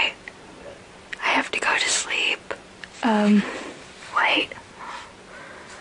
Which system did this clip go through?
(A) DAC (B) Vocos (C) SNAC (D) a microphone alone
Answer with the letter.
D